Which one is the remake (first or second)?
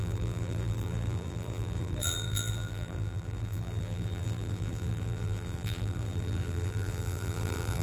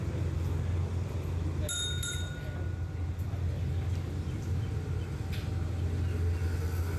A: first